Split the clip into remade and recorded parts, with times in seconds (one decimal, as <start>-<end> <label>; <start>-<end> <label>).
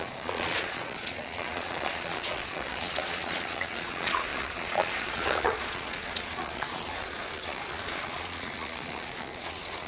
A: 0.0-9.9 remade